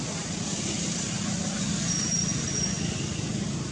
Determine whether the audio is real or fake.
real